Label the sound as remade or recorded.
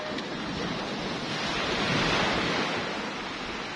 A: recorded